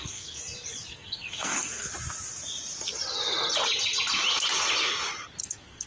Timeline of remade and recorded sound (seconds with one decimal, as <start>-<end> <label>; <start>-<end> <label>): 0.0-0.4 remade; 0.4-0.9 recorded; 0.9-1.9 remade; 1.9-5.4 recorded; 5.4-5.9 remade